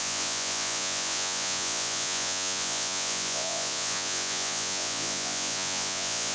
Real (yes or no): no